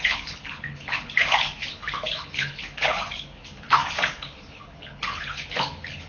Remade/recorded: remade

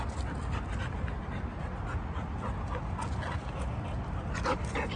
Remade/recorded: recorded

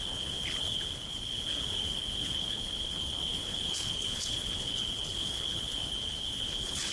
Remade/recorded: remade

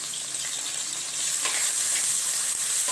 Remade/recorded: recorded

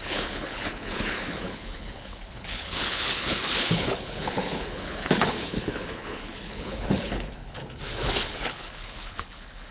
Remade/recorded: remade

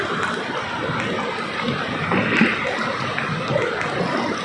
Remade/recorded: recorded